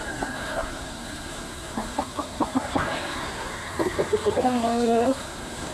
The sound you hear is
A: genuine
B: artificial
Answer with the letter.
B